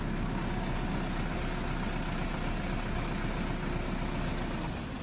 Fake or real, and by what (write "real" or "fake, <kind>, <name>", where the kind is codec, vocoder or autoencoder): real